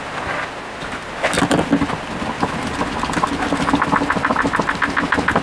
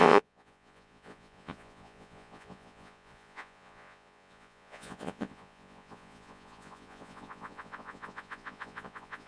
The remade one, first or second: second